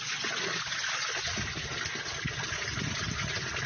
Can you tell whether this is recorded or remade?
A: recorded